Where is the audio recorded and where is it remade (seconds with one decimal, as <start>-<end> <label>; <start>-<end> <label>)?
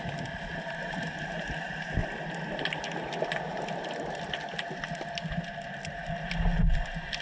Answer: 0.0-7.2 recorded